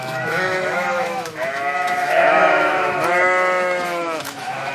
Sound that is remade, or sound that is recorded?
remade